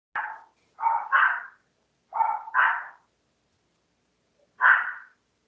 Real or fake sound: real